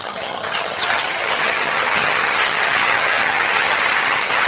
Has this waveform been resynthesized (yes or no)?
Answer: yes